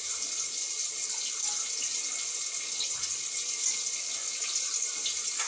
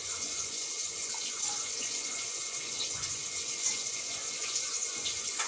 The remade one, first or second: second